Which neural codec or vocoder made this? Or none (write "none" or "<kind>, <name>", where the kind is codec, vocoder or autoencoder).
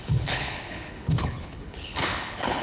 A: codec, HILCodec